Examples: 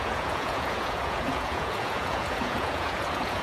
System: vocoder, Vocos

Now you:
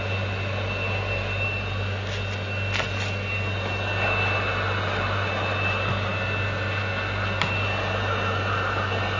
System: none